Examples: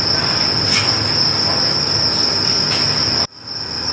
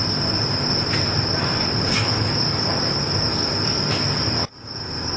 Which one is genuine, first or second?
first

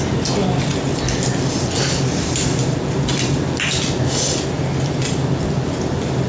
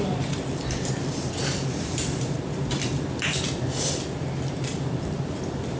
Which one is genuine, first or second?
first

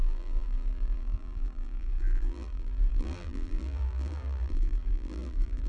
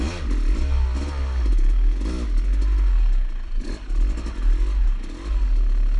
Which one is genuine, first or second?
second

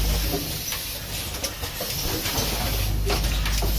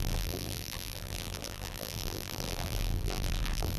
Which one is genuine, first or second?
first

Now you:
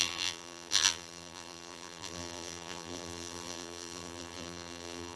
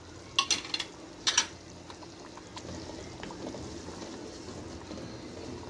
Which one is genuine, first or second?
second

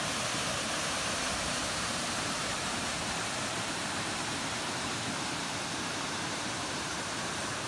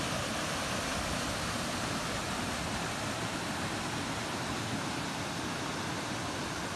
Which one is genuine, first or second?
second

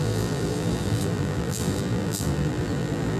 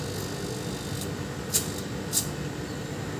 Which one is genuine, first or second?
second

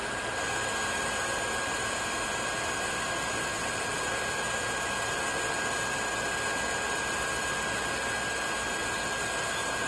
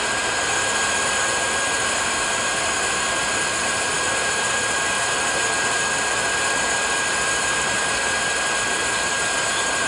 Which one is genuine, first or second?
first